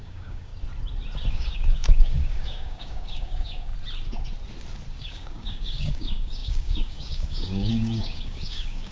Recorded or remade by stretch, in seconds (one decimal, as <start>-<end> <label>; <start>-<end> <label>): 0.0-0.5 remade; 0.5-1.3 recorded; 1.3-3.7 remade; 3.7-5.0 recorded; 5.0-8.9 remade